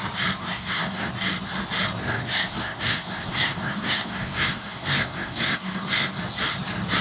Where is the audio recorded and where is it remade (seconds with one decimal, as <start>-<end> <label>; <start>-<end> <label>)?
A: 0.0-0.4 recorded; 0.4-1.1 remade; 1.1-2.0 recorded; 2.0-6.2 remade; 6.2-7.0 recorded